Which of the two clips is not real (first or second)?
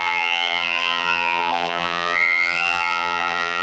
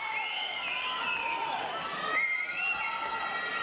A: first